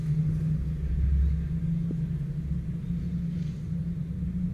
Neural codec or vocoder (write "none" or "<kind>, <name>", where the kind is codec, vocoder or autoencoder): none